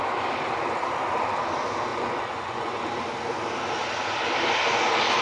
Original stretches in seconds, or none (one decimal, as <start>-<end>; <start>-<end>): 0.0-1.9; 2.9-5.2